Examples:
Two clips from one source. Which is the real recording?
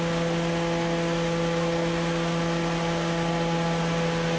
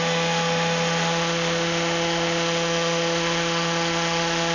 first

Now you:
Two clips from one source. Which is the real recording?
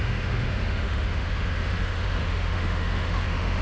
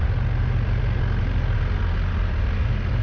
second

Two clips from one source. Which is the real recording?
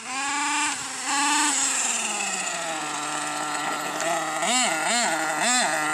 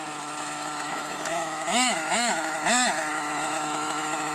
first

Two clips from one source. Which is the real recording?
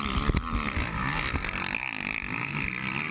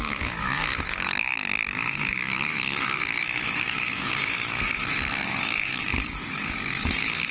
first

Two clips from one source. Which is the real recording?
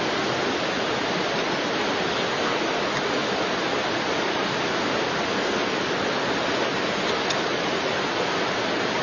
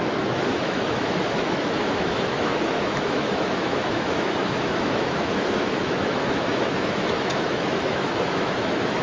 first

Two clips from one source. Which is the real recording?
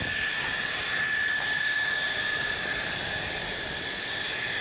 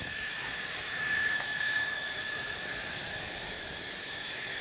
first